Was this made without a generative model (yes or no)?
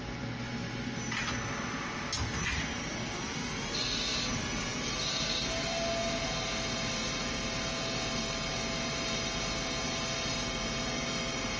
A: yes